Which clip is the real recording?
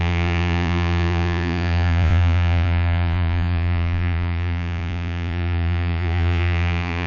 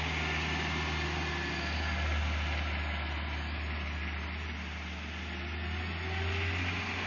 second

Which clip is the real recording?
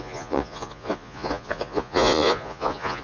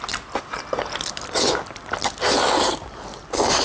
second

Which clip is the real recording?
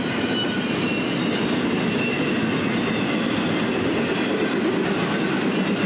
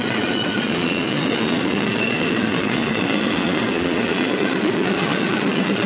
first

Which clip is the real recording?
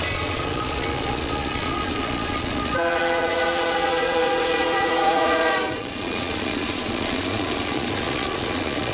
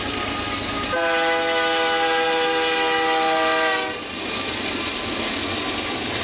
second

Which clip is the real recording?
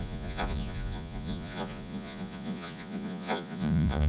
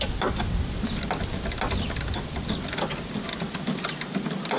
second